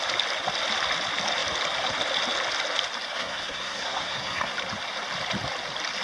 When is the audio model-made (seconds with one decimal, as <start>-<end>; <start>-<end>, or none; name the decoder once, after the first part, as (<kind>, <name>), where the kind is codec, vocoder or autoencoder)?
3.1-4.5 (codec, SNAC)